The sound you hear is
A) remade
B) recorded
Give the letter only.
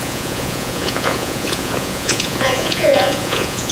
A